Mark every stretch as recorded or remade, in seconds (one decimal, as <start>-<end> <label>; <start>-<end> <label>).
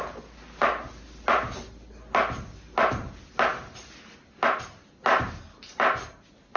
0.0-6.6 recorded